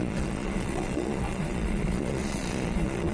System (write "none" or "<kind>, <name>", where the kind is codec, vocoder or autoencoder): vocoder, Vocos